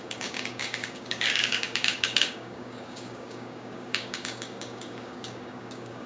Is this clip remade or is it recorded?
remade